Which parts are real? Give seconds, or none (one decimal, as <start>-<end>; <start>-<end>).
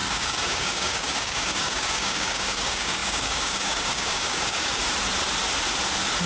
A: 4.8-6.3